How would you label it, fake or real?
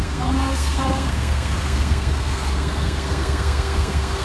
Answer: fake